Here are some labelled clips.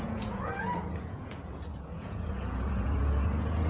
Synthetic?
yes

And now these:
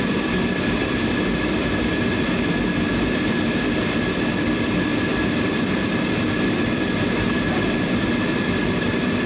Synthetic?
yes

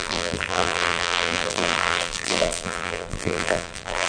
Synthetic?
yes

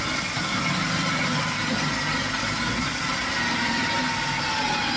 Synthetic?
no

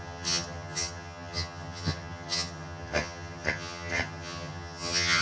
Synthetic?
yes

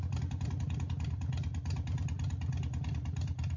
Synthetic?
no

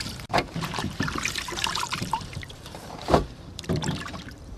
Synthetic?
yes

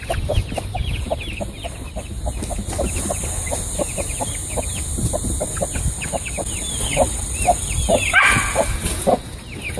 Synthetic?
no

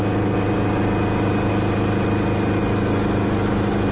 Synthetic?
no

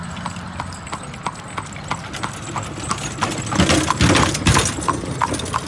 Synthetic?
no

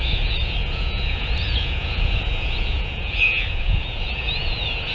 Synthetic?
yes